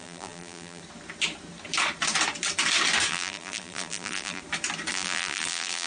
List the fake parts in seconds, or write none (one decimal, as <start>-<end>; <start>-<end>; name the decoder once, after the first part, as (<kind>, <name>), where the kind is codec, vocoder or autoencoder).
0.0-0.8 (vocoder, BigVGAN v2); 3.1-4.4; 4.9-5.9